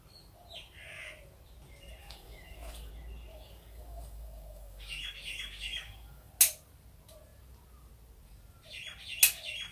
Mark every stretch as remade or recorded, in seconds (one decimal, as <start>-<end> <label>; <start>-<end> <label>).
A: 0.0-2.0 recorded; 2.0-2.9 remade; 2.9-3.3 recorded; 3.3-6.3 remade; 6.3-9.7 recorded